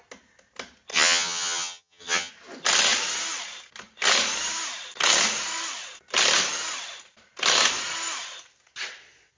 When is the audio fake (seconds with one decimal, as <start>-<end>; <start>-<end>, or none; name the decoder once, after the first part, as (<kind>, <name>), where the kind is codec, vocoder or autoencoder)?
0.9-2.3 (vocoder, HiFi-GAN)